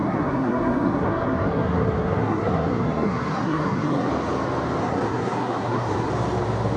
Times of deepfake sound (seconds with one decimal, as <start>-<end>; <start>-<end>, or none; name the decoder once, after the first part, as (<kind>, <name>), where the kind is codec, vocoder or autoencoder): 0.0-4.1 (codec, SNAC); 4.8-6.1

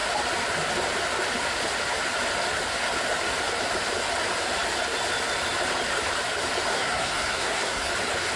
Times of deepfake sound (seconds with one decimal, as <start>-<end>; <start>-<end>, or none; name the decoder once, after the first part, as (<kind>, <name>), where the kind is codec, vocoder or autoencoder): 6.7-7.9 (codec, SNAC)

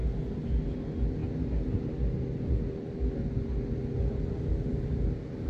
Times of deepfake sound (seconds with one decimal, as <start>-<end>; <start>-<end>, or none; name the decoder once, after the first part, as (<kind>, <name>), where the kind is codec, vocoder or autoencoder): none

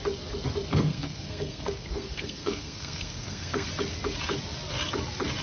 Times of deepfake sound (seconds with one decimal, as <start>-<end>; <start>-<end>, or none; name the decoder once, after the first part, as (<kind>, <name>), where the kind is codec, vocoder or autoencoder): 0.7-3.7 (codec, SNAC)

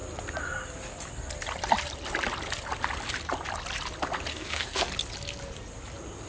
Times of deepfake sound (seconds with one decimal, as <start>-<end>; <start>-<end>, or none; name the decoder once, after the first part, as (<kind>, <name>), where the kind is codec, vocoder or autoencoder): 4.3-4.9 (codec, SNAC)